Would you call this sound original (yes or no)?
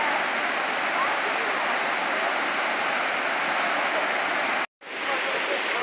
yes